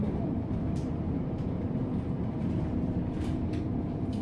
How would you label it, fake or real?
fake